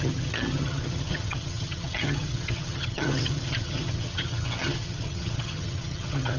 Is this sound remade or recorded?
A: remade